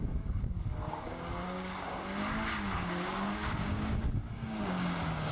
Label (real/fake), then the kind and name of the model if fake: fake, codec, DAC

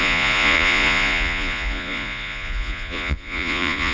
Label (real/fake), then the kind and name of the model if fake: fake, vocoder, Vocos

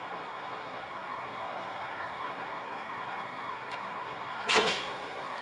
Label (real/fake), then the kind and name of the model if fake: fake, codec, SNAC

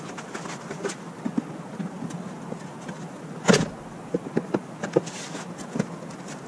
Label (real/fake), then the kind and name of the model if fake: real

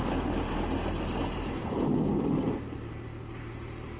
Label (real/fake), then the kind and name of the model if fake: real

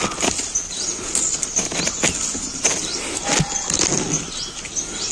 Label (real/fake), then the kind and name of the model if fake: real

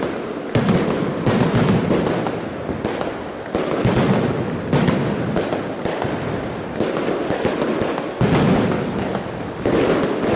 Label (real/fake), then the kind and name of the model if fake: real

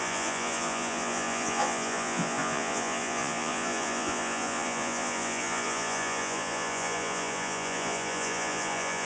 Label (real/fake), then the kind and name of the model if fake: fake, vocoder, Vocos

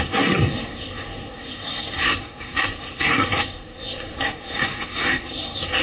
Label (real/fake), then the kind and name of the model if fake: fake, codec, SNAC